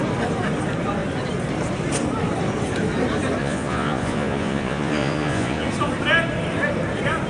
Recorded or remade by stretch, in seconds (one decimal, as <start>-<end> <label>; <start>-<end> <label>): 0.0-3.4 recorded; 3.4-5.7 remade; 5.7-7.3 recorded